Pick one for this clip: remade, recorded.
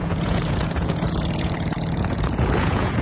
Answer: remade